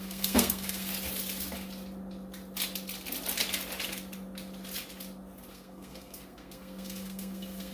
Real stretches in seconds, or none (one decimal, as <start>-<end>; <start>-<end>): 0.9-5.5